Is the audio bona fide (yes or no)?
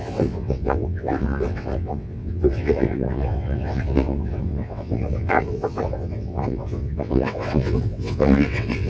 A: no